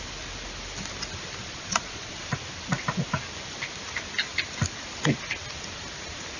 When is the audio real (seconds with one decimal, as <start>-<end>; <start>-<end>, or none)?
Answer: 0.0-1.4; 2.1-6.4